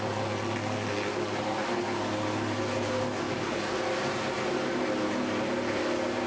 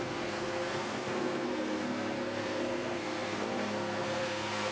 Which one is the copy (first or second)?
second